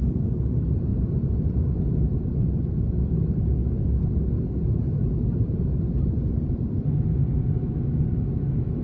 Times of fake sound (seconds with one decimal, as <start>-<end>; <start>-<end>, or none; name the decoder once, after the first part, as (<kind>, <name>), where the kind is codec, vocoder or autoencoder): none